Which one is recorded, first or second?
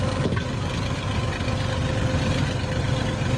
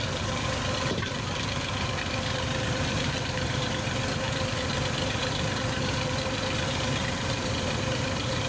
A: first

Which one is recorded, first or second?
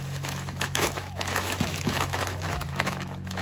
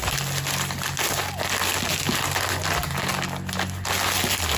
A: second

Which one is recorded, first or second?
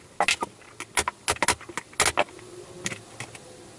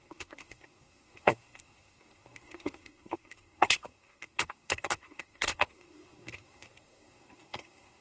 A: first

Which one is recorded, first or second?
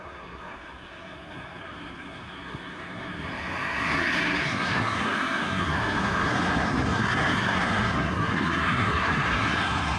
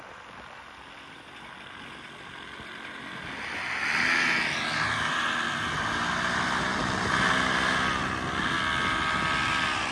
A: second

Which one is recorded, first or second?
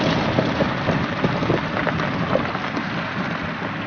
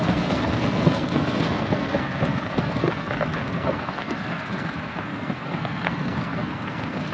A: first